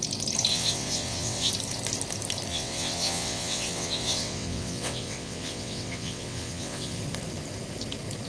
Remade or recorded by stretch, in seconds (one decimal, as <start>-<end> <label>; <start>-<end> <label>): 0.0-0.5 recorded; 0.5-1.5 remade; 1.5-2.5 recorded; 2.5-7.0 remade; 7.0-8.3 recorded